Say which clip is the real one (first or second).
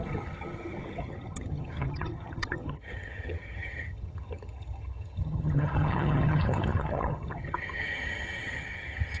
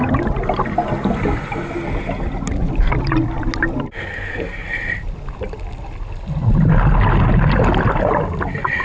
second